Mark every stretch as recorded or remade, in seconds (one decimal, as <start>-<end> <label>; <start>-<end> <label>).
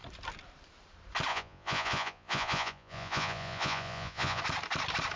0.0-1.3 recorded; 1.3-4.4 remade; 4.4-5.2 recorded